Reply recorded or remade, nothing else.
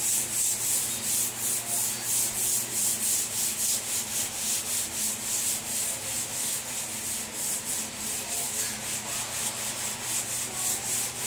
recorded